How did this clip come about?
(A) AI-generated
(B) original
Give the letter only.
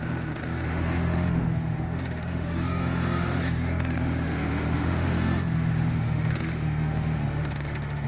A